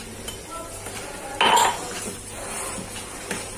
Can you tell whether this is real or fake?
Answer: real